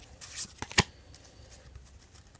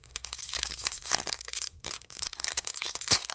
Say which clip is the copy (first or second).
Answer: second